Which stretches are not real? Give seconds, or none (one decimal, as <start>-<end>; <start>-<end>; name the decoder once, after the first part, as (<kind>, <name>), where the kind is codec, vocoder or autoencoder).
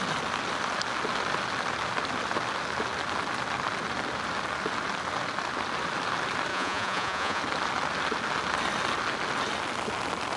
6.5-7.4 (vocoder, Vocos)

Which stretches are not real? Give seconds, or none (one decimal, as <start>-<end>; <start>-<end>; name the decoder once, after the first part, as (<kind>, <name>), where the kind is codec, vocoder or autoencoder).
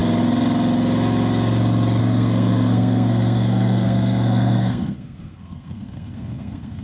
2.0-6.8 (codec, SNAC)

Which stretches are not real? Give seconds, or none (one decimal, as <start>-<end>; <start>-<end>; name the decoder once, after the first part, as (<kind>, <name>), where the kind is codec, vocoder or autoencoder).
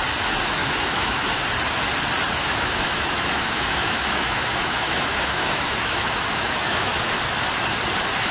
0.6-1.4 (autoencoder, DAC-VAE); 2.5-6.9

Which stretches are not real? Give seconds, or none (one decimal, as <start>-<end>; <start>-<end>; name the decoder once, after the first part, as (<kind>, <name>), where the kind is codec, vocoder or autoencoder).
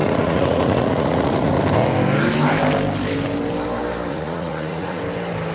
0.0-1.6 (vocoder, Vocos); 4.1-5.0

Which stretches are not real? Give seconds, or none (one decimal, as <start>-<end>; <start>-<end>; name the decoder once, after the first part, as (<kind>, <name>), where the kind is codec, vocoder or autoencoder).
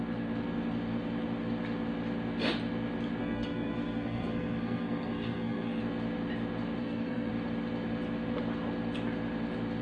3.2-5.8 (codec, SNAC); 6.8-7.3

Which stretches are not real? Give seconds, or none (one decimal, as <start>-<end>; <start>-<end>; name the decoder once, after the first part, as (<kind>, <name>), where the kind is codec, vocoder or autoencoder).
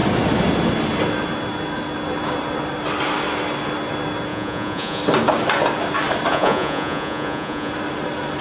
4.3-5.0 (vocoder, Vocos); 6.3-7.7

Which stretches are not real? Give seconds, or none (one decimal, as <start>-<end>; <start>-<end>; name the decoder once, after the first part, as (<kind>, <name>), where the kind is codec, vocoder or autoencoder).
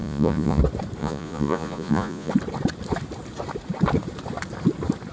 0.0-0.6 (vocoder, Vocos); 1.0-2.3